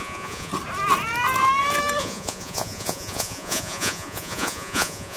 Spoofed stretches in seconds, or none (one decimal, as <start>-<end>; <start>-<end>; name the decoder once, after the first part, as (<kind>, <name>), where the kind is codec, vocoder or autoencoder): 0.0-0.5 (vocoder, Vocos); 2.0-5.2